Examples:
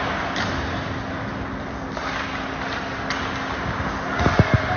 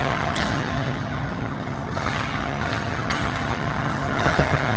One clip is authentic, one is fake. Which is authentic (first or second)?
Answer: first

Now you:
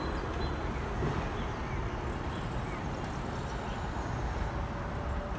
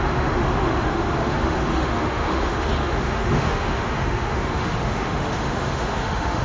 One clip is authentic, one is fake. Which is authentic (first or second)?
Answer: first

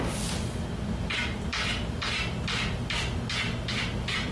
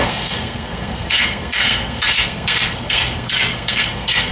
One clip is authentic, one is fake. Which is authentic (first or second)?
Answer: first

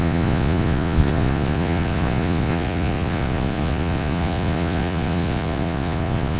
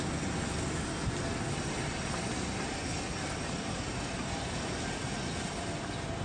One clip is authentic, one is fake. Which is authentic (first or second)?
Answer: second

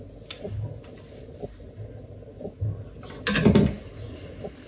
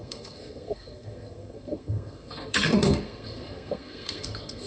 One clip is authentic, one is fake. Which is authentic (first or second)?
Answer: first